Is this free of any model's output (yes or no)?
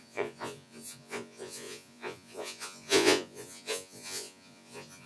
no